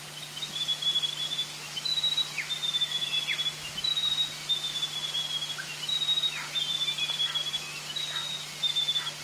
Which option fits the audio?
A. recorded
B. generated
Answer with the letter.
A